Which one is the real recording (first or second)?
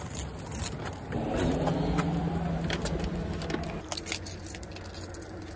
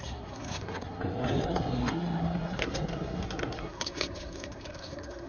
first